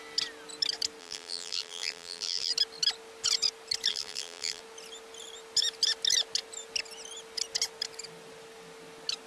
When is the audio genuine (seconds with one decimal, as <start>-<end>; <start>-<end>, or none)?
0.0-1.0; 2.5-3.9; 4.6-9.3